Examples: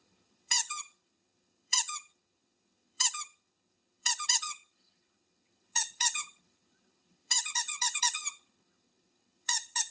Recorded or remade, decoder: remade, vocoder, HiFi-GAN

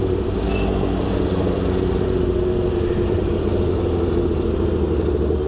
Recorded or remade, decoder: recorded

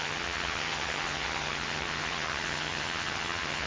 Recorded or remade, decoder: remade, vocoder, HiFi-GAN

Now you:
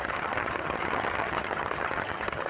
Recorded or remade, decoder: remade, vocoder, HiFi-GAN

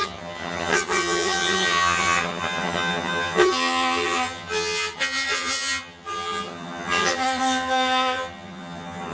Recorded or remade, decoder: remade, vocoder, HiFi-GAN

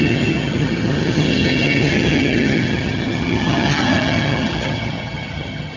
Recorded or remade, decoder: remade, vocoder, HiFi-GAN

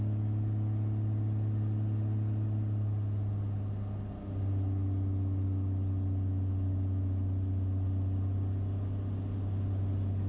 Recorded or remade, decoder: recorded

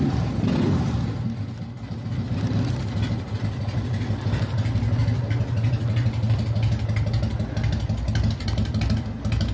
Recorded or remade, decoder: recorded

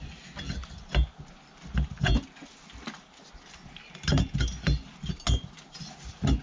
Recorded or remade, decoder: recorded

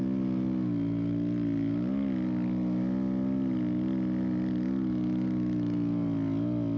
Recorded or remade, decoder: recorded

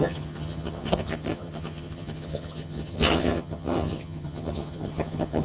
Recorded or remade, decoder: remade, vocoder, HiFi-GAN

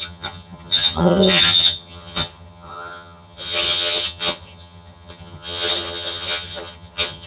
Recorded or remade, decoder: remade, vocoder, HiFi-GAN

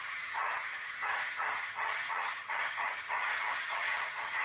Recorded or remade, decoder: remade, vocoder, HiFi-GAN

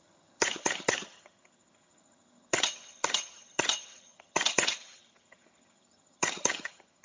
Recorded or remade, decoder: remade, vocoder, HiFi-GAN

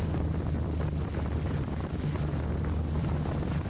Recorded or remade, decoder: recorded